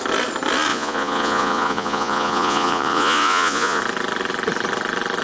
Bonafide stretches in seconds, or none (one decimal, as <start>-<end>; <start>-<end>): 0.0-0.7; 3.8-5.2